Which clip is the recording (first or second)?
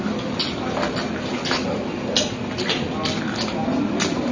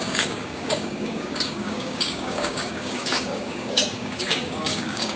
first